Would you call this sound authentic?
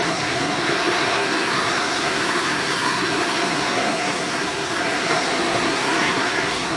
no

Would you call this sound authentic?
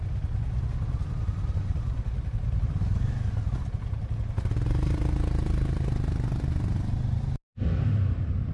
yes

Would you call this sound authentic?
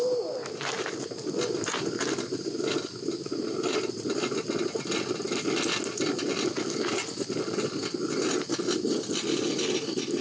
yes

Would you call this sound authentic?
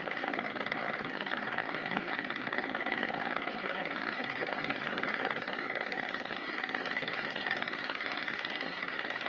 no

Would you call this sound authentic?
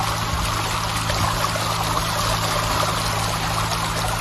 yes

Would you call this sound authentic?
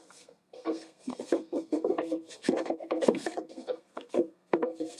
no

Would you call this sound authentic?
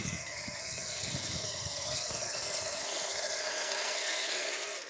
no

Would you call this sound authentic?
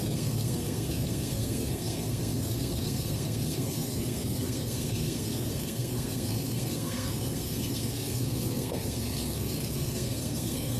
no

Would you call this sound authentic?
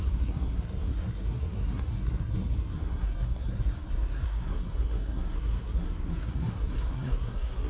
no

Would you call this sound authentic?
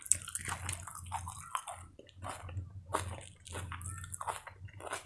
yes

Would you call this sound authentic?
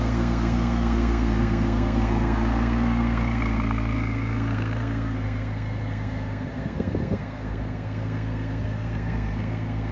no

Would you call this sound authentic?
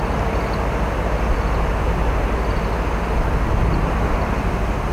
yes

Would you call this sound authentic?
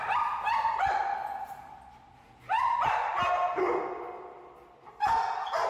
yes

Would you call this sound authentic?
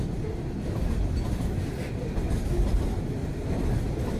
yes